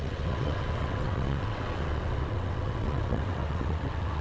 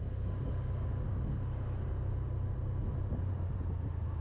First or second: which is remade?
first